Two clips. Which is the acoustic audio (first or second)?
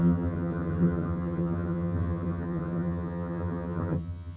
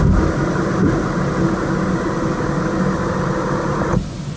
second